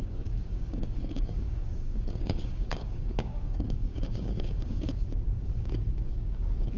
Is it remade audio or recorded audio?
remade